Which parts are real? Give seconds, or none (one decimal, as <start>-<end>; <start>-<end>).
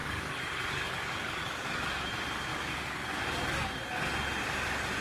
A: 2.1-2.5; 3.2-5.0